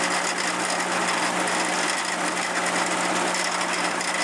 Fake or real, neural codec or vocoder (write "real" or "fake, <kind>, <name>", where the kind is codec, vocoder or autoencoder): real